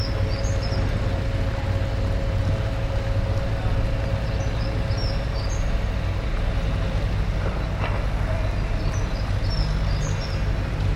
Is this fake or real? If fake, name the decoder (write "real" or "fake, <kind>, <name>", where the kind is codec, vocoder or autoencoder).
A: real